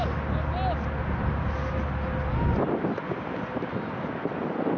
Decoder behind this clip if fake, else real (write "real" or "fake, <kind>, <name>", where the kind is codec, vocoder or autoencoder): real